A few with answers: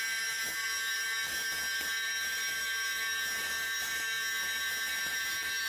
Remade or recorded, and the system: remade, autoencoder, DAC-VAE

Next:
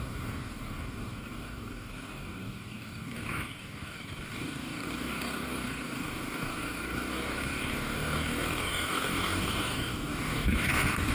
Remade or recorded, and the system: remade, codec, DAC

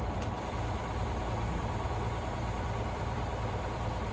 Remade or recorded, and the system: remade, vocoder, BigVGAN v2